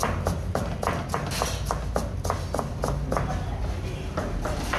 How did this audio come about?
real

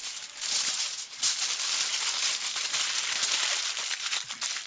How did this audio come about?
real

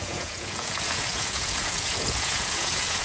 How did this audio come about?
fake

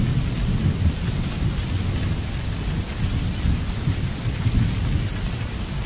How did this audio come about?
real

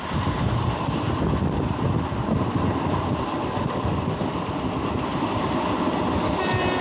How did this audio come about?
real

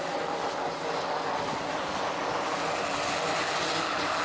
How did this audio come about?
real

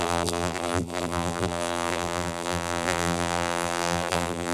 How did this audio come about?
fake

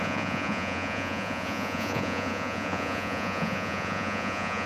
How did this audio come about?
fake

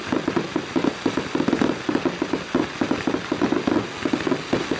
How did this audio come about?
real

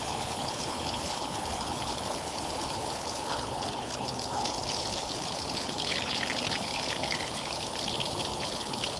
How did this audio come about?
fake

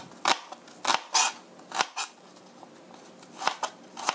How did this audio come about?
real